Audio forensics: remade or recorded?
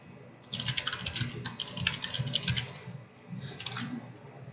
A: recorded